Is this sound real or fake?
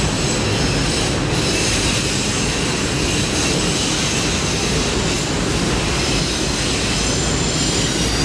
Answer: real